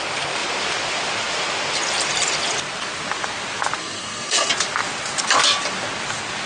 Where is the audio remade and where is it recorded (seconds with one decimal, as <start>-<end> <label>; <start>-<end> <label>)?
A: 0.0-3.8 recorded; 3.8-4.5 remade; 4.5-6.5 recorded